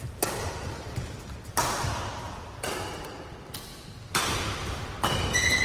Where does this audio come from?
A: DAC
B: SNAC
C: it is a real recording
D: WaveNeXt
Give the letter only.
C